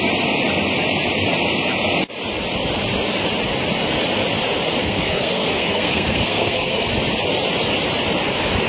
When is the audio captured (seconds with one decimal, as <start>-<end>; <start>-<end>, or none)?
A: 0.0-4.8; 6.9-8.7